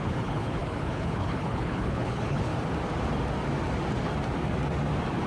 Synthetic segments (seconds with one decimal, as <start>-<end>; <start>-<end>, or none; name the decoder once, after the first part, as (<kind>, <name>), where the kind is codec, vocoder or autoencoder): 0.0-2.5 (codec, HILCodec)